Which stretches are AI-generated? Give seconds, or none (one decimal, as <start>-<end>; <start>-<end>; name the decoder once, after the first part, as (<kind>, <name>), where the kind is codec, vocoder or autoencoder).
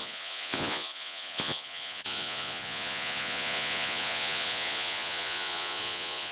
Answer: 0.0-6.3 (vocoder, Vocos)